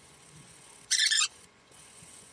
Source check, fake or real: fake